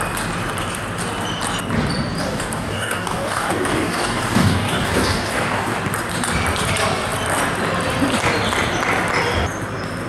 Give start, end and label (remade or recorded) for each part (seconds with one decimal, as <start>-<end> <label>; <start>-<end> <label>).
0.0-2.2 recorded; 2.2-5.8 remade; 5.8-10.1 recorded